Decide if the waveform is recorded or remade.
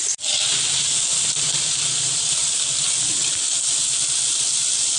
recorded